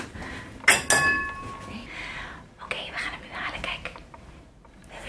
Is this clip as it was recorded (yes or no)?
yes